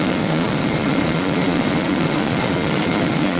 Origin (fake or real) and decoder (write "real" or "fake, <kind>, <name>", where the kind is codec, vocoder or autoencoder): fake, vocoder, Vocos